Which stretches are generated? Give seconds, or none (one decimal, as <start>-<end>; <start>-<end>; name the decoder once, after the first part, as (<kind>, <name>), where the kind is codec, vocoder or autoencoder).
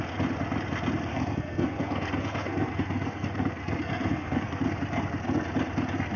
1.1-4.6 (codec, SNAC)